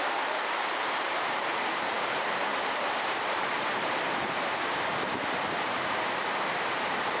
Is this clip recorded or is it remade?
remade